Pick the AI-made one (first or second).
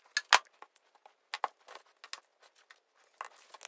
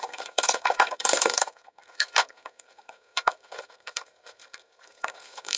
second